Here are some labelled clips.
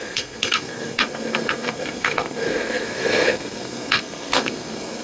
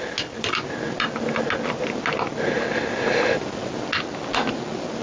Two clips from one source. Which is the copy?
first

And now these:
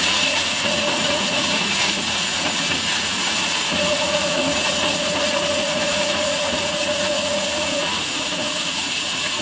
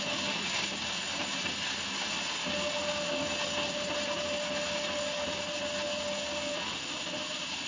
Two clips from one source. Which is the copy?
first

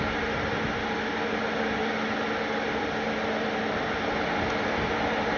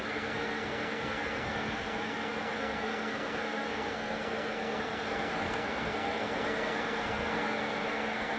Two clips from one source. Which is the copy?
second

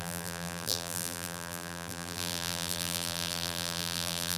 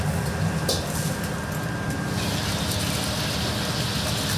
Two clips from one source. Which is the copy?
first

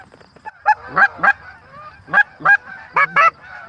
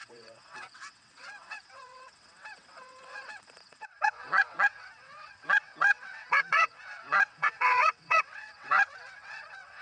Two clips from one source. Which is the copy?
second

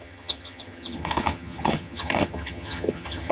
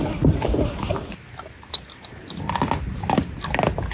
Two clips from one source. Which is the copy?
first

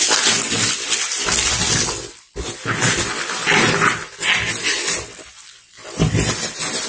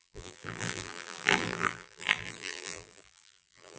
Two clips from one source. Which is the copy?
second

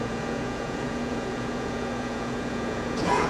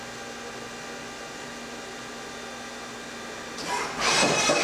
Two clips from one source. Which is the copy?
first